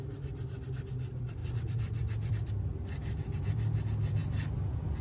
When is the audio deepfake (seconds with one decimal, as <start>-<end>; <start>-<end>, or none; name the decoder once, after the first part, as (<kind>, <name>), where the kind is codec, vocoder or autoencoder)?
1.4-2.3 (vocoder, BigVGAN v2)